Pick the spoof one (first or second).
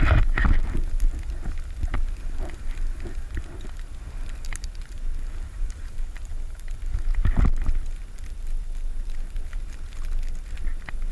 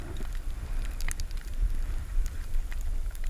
second